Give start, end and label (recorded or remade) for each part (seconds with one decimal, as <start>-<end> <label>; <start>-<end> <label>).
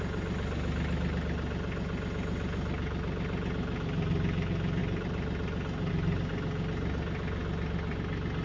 0.0-8.4 recorded